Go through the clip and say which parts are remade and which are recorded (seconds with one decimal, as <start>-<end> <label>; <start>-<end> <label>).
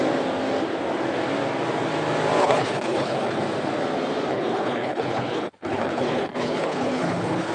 0.0-2.4 recorded; 2.4-3.4 remade; 3.4-4.3 recorded; 4.3-7.5 remade